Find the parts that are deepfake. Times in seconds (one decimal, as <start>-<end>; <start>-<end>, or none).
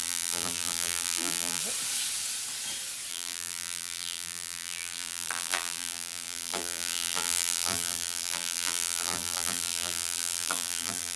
0.0-1.6; 3.1-11.2